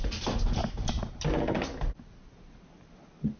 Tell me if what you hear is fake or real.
real